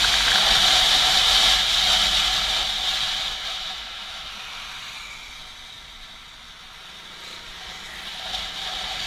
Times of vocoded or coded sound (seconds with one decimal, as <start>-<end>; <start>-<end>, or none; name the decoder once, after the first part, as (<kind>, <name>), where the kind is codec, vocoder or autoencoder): 3.5-4.3 (autoencoder, DAC-VAE)